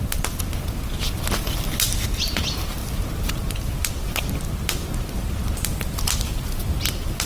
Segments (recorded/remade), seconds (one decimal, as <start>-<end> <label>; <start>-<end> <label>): 0.0-7.3 recorded